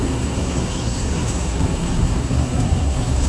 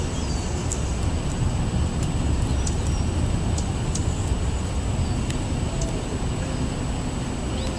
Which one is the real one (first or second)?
second